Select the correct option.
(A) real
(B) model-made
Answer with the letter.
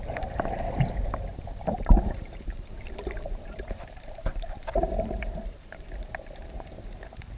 B